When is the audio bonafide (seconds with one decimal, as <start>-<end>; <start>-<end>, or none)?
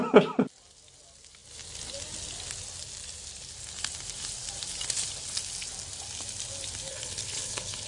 0.0-6.9